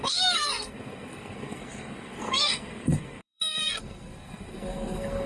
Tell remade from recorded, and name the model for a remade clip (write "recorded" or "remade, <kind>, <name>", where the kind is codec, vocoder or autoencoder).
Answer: remade, codec, SNAC